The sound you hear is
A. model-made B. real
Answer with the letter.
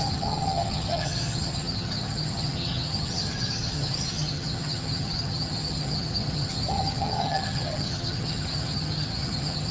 A